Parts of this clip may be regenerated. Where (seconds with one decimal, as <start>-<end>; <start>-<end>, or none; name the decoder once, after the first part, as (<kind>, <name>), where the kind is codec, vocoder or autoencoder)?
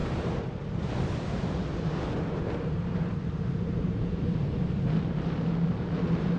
0.0-6.4 (vocoder, BigVGAN v2)